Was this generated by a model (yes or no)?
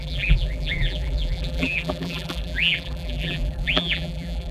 yes